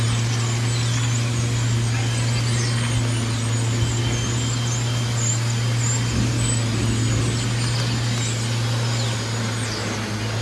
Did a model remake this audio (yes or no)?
no